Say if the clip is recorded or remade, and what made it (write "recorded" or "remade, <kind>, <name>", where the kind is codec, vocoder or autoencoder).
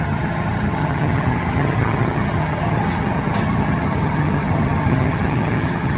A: remade, vocoder, HiFi-GAN